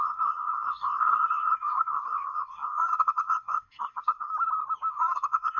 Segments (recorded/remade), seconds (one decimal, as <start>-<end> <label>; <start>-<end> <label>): 0.0-4.3 remade; 4.3-4.9 recorded; 4.9-5.6 remade